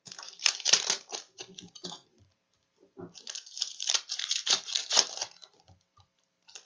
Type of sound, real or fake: fake